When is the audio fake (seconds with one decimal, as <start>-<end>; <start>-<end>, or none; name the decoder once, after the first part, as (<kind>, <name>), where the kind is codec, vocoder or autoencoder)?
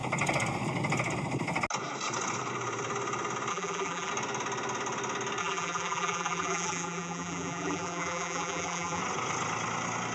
3.5-4.1 (vocoder, BigVGAN v2); 5.4-9.0